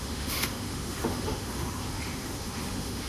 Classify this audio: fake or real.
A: fake